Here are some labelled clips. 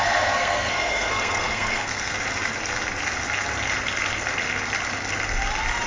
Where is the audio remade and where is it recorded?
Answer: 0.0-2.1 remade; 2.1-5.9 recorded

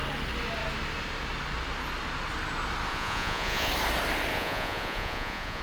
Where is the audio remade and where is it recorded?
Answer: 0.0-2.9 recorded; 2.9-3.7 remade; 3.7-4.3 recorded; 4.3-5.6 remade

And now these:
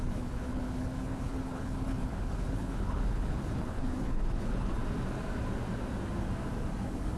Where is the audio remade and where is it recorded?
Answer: 0.0-4.8 remade; 4.8-6.8 recorded; 6.8-7.2 remade

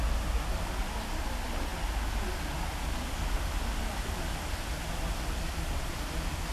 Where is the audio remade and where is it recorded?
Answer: 0.0-6.5 recorded